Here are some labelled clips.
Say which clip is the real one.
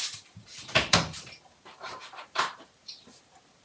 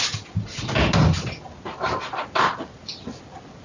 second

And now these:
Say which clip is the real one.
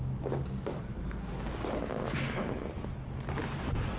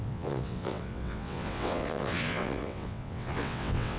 first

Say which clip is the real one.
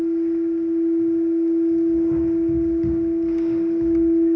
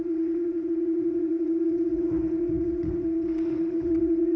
first